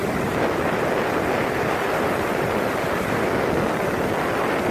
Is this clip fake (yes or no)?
no